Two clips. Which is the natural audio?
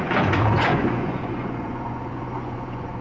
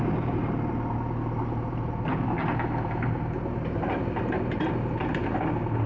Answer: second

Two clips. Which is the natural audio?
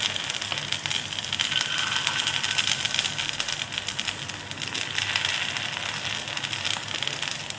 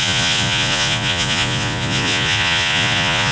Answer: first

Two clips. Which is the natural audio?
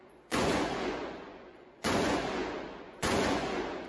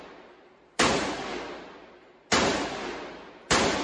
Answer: second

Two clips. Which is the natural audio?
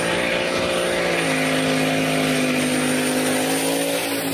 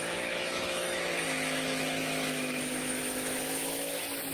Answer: first